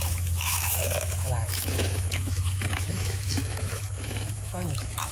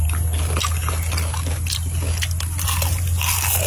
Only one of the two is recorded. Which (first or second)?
second